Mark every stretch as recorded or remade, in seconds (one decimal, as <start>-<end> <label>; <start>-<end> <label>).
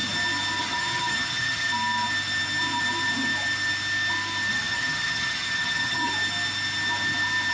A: 0.0-0.6 recorded; 0.6-1.7 remade; 1.7-4.5 recorded; 4.5-6.1 remade; 6.1-7.5 recorded